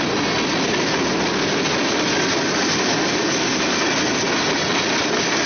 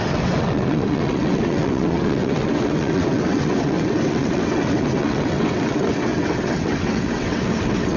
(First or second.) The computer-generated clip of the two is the second